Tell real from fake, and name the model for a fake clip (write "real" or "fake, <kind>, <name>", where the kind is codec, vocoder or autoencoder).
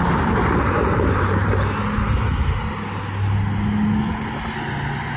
real